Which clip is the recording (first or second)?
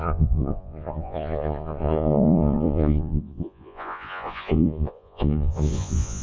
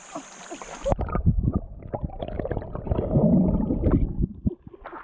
second